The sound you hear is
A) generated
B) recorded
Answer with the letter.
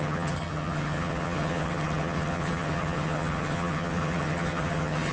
A